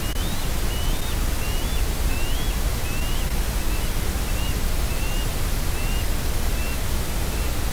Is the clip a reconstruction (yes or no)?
no